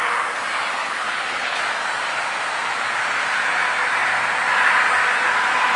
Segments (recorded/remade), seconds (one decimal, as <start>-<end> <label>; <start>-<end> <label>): 0.0-0.8 recorded; 0.8-1.6 remade; 1.6-5.8 recorded